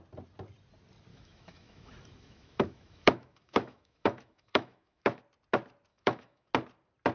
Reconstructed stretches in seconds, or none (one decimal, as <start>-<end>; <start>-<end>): 1.1-5.2; 5.9-6.5